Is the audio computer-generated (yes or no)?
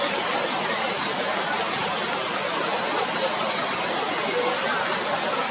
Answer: no